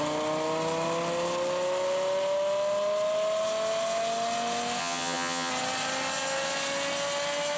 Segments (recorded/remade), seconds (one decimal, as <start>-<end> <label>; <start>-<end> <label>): 0.0-4.8 recorded; 4.8-5.5 remade; 5.5-7.6 recorded